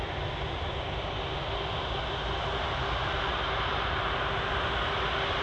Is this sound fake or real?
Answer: real